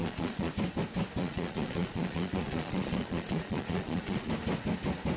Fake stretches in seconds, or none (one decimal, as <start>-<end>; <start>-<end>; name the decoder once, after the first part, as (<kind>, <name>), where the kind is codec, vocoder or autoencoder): 0.0-0.5 (vocoder, Vocos); 1.2-4.3